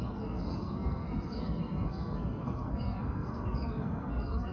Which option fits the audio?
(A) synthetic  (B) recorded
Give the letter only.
A